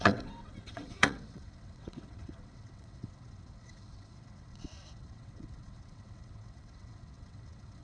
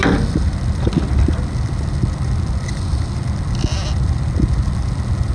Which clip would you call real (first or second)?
second